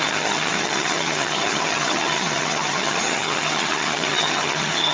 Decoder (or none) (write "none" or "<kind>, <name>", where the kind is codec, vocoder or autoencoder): vocoder, HiFi-GAN